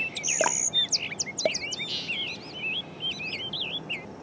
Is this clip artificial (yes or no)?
no